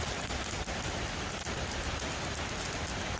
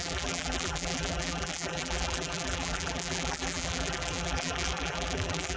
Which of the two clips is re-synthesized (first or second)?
second